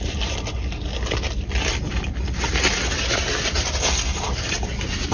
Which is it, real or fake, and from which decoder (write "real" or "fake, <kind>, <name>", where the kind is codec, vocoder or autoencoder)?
real